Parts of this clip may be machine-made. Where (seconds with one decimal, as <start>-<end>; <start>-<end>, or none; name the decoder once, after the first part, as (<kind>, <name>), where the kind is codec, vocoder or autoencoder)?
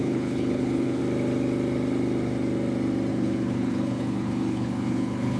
0.0-1.0 (codec, HILCodec); 3.1-5.4